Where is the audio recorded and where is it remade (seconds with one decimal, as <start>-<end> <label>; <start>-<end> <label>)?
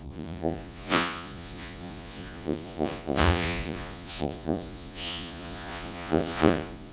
0.0-6.9 remade